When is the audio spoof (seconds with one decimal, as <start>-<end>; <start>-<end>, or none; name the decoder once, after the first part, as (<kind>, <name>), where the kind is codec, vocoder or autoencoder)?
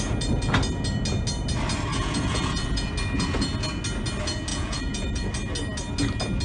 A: 1.9-2.9 (vocoder, Vocos); 4.5-5.3